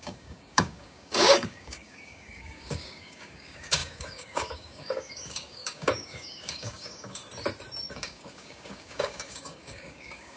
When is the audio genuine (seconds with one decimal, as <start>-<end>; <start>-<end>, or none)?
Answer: 7.2-7.9